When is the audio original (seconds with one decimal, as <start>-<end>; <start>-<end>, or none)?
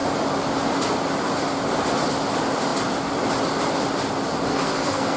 0.0-4.5